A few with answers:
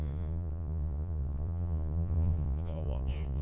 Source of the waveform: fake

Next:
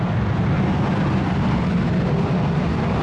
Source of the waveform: real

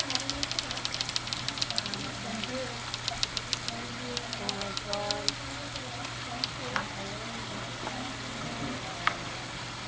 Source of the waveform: real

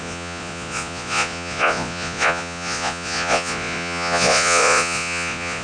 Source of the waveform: fake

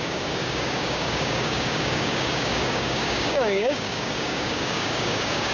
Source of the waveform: fake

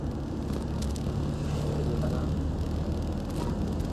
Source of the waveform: real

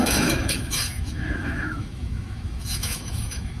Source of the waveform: fake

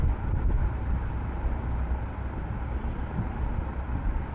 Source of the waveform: real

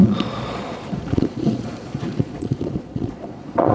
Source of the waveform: fake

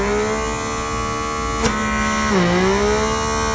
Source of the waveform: real